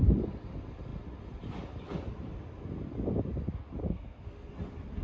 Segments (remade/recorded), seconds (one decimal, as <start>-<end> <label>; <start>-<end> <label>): 0.0-3.8 recorded; 3.8-4.5 remade; 4.5-5.0 recorded